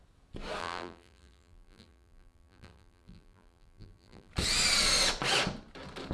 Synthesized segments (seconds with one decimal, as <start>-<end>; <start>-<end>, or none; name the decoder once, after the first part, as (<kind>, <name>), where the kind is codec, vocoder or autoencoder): 0.6-4.3 (vocoder, BigVGAN v2)